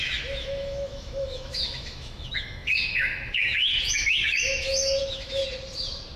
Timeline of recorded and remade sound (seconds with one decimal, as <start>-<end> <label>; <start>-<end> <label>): 0.0-5.4 remade; 5.4-6.2 recorded